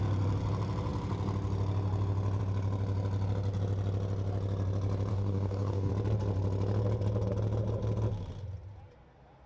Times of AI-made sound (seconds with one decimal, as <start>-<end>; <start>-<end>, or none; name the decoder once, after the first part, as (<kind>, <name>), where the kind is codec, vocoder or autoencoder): 5.1-5.9 (codec, DAC)